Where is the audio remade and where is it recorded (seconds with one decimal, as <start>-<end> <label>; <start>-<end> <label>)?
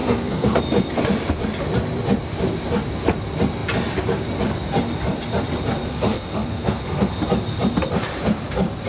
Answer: 0.0-0.6 remade; 0.6-5.9 recorded; 5.9-7.1 remade; 7.1-8.9 recorded